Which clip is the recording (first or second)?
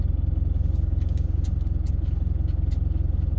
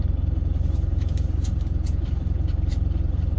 first